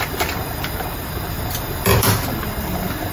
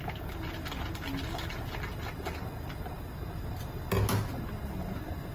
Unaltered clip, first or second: second